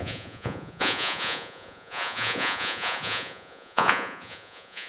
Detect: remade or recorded remade